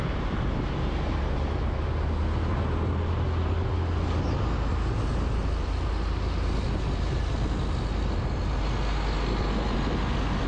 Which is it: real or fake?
real